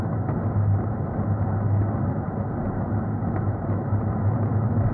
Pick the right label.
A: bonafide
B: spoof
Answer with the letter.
A